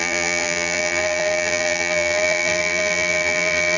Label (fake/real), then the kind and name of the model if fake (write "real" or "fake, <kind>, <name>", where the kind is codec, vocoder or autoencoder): fake, vocoder, BigVGAN v2